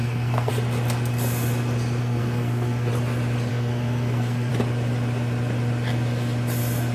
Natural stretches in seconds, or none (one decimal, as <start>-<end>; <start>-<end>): 0.5-2.0; 2.9-3.5; 4.5-6.9